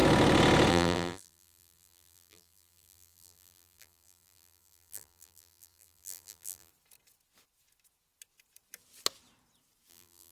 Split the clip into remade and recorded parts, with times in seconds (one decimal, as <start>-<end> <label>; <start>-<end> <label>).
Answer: 0.0-0.7 recorded; 0.7-6.7 remade; 6.7-9.9 recorded; 9.9-10.3 remade